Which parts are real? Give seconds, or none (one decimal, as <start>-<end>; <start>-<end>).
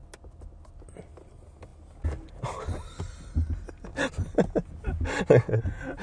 0.0-6.0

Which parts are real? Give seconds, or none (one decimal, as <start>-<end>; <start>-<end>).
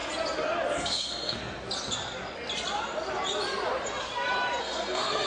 0.0-0.7; 1.4-4.6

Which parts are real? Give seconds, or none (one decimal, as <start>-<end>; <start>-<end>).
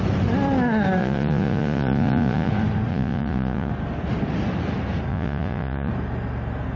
0.0-1.0; 2.5-2.9; 3.7-5.1; 5.9-6.8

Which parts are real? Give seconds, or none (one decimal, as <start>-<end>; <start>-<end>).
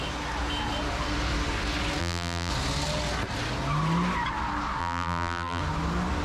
0.0-2.0; 2.5-4.8; 5.6-6.2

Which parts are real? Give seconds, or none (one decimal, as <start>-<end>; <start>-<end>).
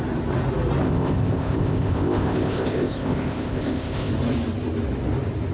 0.0-0.8; 4.1-5.5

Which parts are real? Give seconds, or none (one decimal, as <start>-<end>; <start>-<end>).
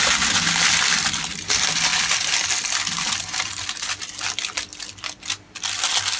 0.0-6.2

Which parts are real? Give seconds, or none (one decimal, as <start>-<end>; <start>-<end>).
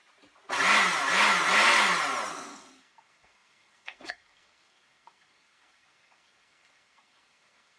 0.0-2.3